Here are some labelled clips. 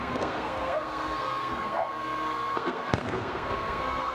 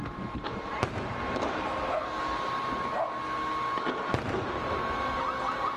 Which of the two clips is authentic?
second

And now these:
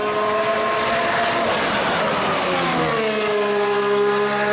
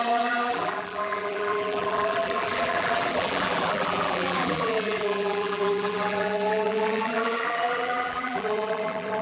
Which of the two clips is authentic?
first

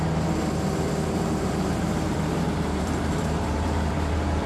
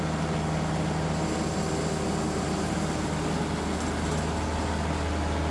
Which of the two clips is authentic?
second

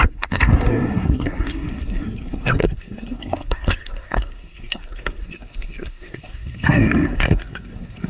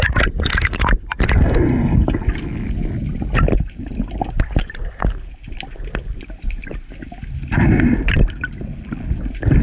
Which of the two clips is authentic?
second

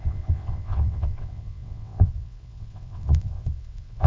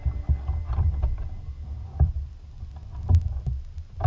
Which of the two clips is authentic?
second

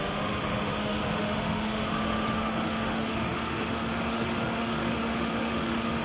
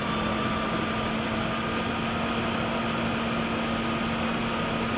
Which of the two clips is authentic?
second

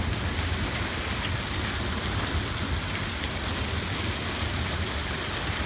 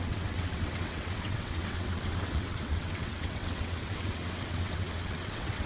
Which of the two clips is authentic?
first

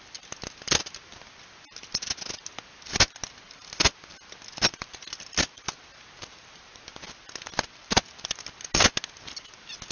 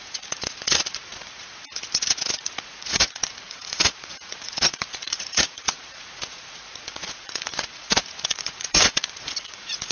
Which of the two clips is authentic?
first